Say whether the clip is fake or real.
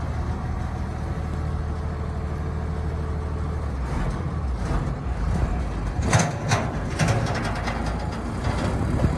real